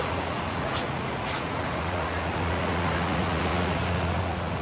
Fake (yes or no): yes